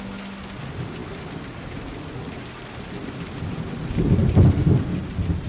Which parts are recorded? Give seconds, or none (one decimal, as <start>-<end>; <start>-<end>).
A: 0.0-5.5

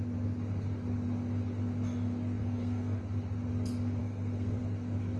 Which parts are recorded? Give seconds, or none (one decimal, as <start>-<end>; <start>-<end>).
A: 0.0-2.4; 3.0-4.0; 4.6-5.2

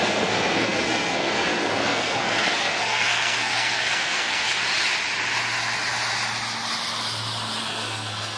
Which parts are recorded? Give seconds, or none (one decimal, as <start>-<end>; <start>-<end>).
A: 4.6-7.6

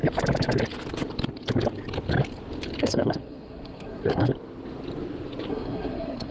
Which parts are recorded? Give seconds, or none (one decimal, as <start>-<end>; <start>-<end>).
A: 0.0-2.8; 4.3-5.5

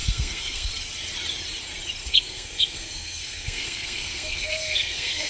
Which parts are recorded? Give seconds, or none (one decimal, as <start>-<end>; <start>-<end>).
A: 0.7-2.0

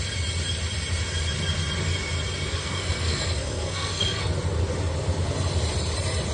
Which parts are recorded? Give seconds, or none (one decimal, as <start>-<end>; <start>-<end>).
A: 0.0-2.6; 4.3-6.3